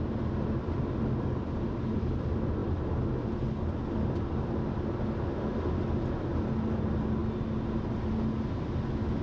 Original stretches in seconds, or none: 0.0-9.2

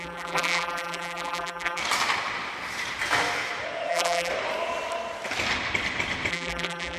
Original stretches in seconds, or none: 1.8-3.9; 4.3-6.3

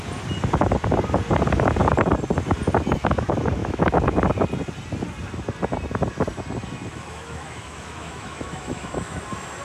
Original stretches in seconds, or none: 0.0-3.6; 4.2-6.9; 9.2-9.6

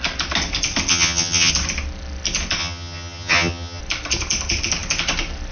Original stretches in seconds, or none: 0.0-0.9; 1.5-2.6; 3.8-5.5

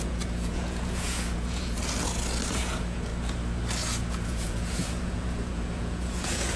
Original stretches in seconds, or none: 1.8-2.5; 3.1-4.0

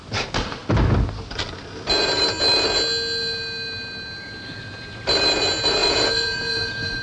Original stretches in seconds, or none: 0.0-5.8

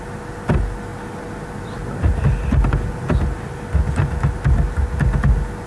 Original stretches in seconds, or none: 0.0-5.7